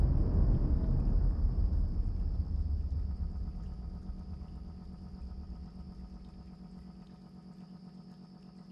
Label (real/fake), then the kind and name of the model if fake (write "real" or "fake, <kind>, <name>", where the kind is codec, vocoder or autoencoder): real